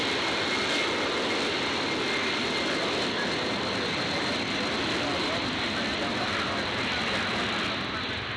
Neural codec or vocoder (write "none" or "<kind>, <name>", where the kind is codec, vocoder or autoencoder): none